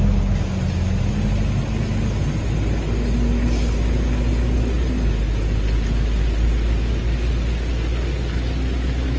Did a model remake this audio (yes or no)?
no